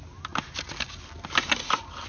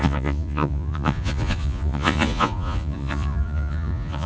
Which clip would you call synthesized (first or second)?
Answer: second